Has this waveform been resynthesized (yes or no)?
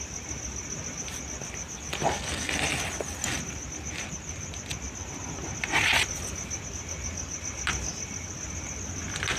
no